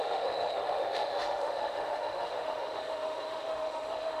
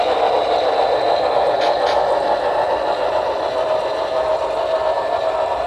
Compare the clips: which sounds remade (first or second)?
first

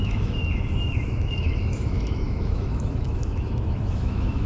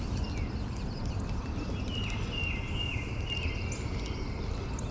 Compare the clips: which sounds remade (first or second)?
first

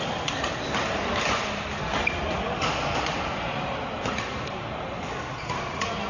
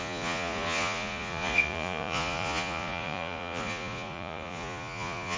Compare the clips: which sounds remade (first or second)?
second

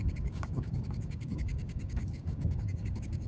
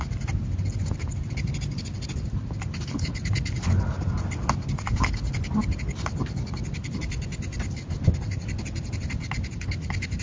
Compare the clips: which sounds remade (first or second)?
first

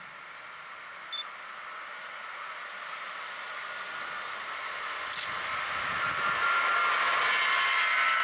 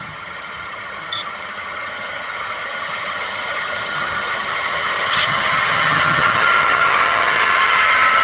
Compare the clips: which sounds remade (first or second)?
second